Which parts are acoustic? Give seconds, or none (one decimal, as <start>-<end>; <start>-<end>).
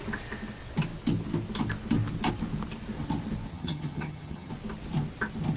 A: 0.0-3.5; 4.5-5.6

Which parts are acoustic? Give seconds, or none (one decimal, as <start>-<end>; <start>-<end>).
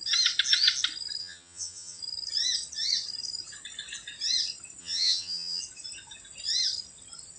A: 0.0-1.2; 2.0-4.8; 5.6-7.4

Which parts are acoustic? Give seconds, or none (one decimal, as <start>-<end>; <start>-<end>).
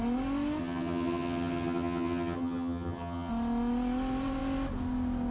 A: 0.0-0.6; 3.3-5.3